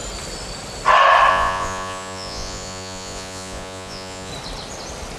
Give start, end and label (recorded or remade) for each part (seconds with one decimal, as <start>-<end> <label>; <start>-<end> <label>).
0.0-1.3 recorded; 1.3-4.3 remade; 4.3-5.2 recorded